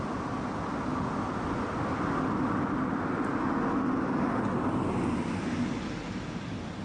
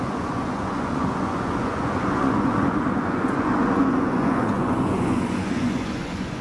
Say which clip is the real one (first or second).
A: first